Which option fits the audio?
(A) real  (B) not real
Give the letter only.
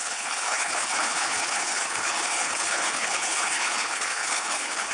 B